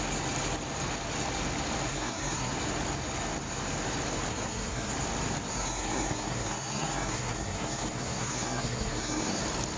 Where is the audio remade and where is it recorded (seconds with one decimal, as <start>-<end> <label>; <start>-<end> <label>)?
0.0-1.9 recorded; 1.9-2.5 remade; 2.5-4.3 recorded; 4.3-4.9 remade; 4.9-5.5 recorded; 5.5-9.4 remade; 9.4-9.8 recorded